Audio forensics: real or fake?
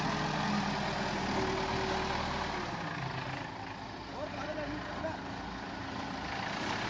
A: real